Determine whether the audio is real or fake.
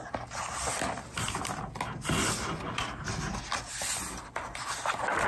real